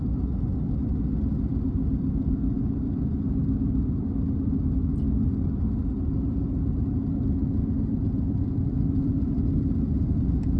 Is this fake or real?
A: real